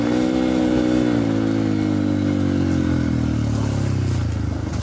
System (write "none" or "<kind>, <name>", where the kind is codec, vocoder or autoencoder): none